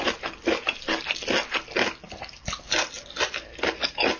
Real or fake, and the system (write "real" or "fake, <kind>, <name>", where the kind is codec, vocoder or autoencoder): real